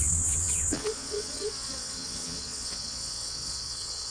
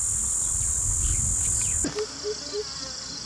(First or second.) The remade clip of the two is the first